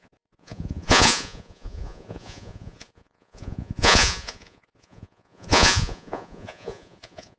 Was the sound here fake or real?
fake